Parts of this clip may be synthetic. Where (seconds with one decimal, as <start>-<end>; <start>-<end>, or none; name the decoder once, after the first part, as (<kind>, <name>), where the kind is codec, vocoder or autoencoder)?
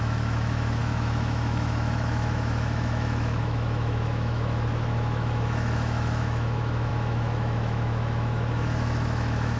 0.0-9.6 (autoencoder, DAC-VAE)